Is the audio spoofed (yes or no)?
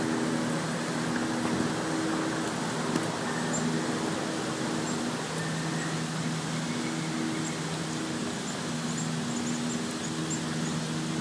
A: no